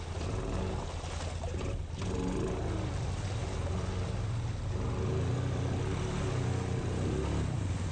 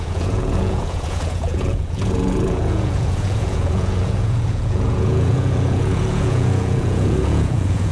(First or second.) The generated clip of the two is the second